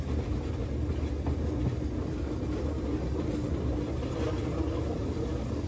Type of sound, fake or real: real